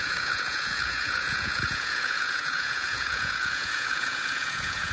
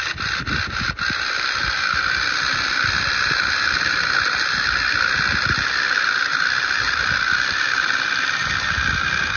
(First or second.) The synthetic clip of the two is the first